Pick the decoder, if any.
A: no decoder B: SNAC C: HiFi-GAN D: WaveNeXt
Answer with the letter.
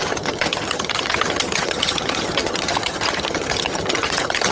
C